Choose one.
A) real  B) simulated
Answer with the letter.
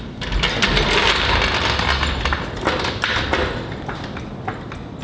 A